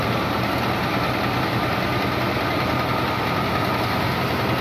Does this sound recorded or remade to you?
recorded